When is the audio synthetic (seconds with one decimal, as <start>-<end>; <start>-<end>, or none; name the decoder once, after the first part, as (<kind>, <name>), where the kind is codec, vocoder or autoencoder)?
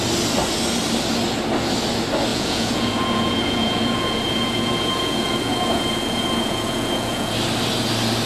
2.3-7.3 (vocoder, Vocos)